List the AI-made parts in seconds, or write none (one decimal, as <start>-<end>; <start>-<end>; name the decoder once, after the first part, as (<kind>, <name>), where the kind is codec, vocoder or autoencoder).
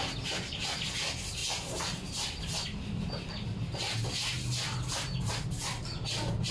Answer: none